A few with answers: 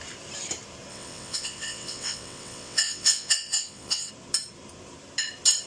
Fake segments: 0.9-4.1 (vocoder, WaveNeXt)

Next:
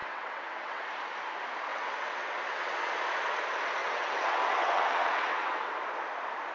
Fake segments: 0.0-0.9 (vocoder, WaveNeXt); 1.7-2.9; 3.8-5.7